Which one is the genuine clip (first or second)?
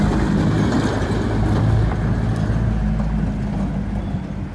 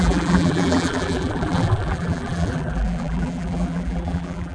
first